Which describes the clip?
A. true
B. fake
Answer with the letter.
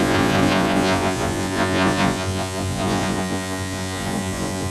B